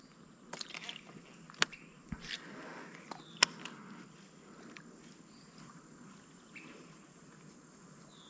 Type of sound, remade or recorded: recorded